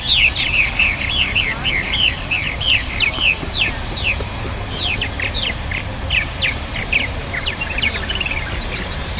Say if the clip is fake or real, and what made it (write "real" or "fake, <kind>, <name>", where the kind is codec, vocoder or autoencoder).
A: fake, vocoder, BigVGAN v2